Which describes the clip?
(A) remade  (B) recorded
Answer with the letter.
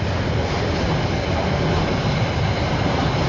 B